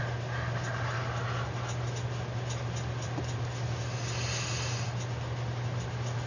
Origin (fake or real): real